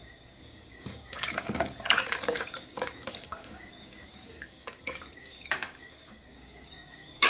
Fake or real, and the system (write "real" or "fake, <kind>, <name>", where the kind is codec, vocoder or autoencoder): fake, codec, DAC